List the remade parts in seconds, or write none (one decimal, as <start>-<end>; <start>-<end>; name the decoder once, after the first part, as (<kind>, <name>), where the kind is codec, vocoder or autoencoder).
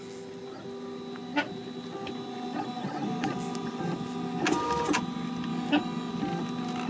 5.5-6.1 (codec, DAC)